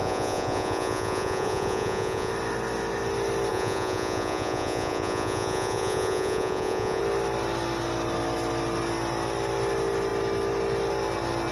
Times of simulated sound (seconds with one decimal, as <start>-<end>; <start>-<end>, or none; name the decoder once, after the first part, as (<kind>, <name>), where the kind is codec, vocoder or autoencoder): 0.0-2.3 (vocoder, Vocos); 3.5-7.0